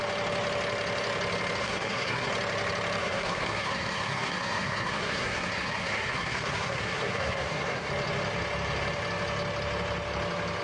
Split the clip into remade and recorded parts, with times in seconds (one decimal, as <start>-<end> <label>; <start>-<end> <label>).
0.0-1.6 recorded; 1.6-2.3 remade; 2.3-3.0 recorded; 3.0-7.9 remade; 7.9-10.6 recorded